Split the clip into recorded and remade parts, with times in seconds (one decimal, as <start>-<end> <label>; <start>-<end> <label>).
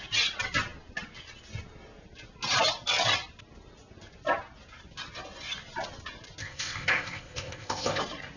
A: 0.0-6.4 recorded; 6.4-8.0 remade; 8.0-8.4 recorded